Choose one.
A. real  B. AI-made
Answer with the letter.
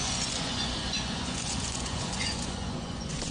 B